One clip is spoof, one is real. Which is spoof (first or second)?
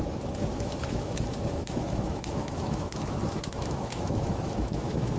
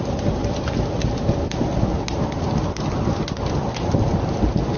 first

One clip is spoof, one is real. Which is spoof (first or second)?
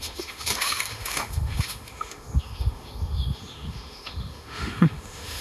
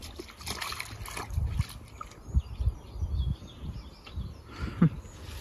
first